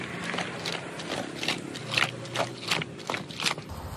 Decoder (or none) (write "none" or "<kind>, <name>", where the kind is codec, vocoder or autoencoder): none